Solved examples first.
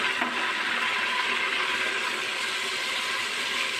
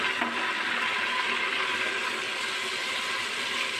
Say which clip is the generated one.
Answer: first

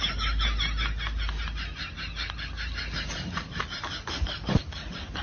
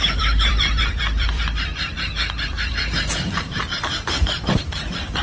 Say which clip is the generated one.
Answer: second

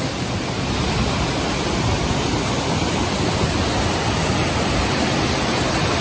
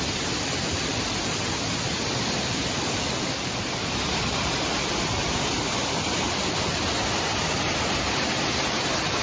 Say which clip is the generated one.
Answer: second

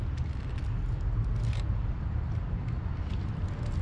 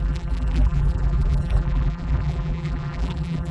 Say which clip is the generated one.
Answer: second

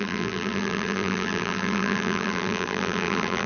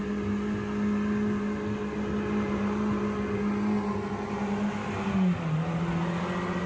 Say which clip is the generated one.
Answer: first